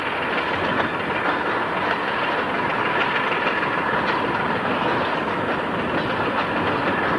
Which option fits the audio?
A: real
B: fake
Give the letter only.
A